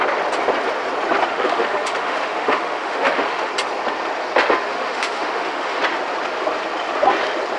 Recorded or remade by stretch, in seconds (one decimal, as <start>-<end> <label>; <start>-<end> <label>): 0.0-1.3 recorded; 1.3-3.5 remade; 3.5-4.7 recorded; 4.7-5.8 remade; 5.8-7.6 recorded